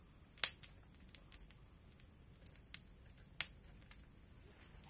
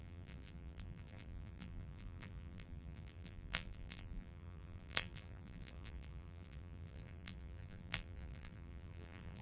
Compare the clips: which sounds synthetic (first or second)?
second